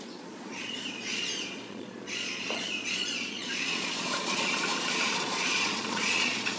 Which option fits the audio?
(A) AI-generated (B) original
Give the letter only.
A